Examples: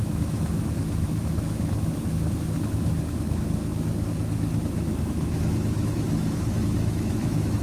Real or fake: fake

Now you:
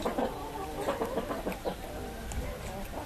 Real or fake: real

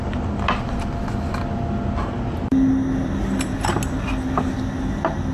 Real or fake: real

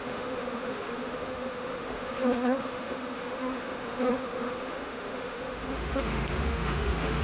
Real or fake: fake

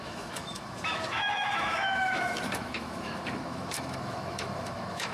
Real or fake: fake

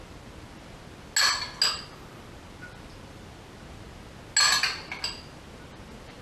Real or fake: real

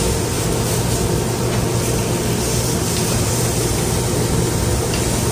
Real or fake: real